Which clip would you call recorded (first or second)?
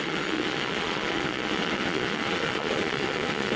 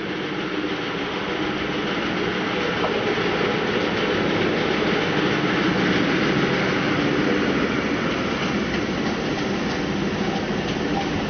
second